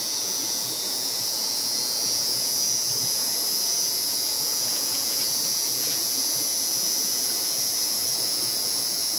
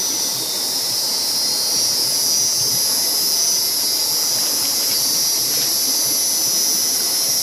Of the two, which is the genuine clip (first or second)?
second